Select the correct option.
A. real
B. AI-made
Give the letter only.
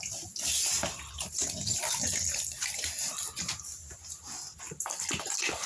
B